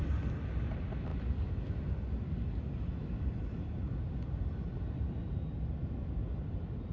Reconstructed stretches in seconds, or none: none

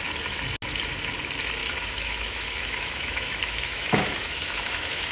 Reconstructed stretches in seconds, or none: 1.6-5.1 (autoencoder, DAC-VAE)

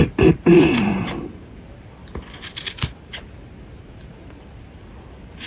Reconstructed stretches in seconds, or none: none

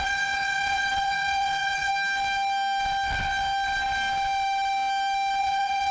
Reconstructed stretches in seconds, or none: 0.0-1.9 (vocoder, Vocos); 5.4-5.9